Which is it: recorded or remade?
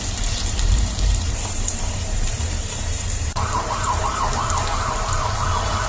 remade